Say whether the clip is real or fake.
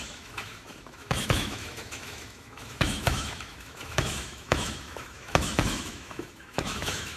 fake